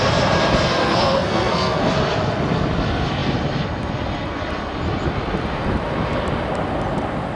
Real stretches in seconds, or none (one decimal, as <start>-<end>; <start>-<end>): 0.0-0.8; 1.9-7.4